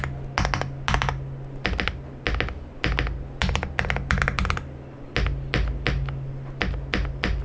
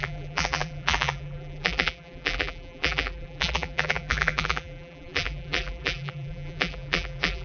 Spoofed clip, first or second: second